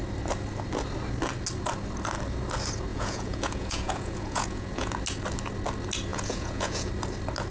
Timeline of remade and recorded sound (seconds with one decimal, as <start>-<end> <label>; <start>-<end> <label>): 0.0-2.9 recorded; 2.9-4.9 remade; 4.9-6.1 recorded; 6.1-6.9 remade; 6.9-7.5 recorded